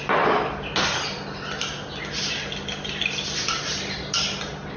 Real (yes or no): yes